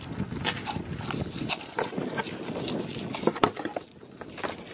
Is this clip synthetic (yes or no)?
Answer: no